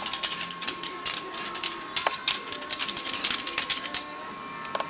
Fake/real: real